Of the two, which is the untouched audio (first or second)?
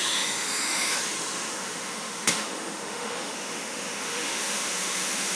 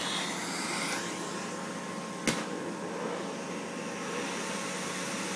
second